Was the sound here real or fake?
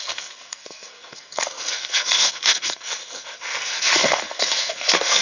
fake